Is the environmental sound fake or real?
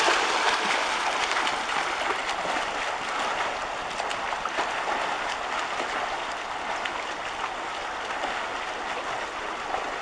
real